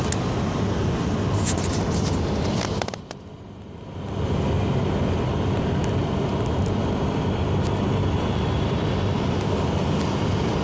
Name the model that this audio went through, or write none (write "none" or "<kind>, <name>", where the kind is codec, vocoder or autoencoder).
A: none